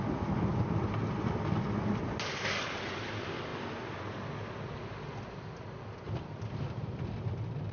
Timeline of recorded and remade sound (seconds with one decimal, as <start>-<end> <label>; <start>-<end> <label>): 0.0-7.7 recorded